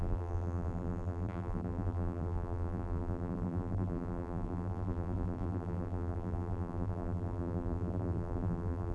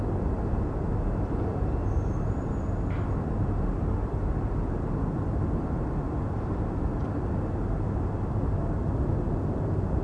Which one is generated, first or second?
first